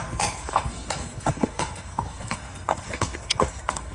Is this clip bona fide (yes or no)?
no